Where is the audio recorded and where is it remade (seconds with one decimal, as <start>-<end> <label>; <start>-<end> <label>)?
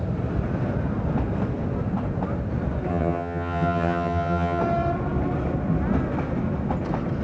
0.0-2.9 recorded; 2.9-4.6 remade; 4.6-7.2 recorded